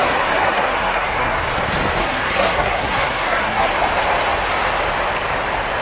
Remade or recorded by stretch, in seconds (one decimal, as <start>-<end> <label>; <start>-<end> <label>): 0.0-1.5 remade; 1.5-2.0 recorded; 2.0-3.7 remade; 3.7-5.8 recorded